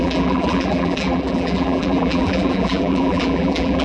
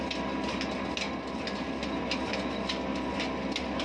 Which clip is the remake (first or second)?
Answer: first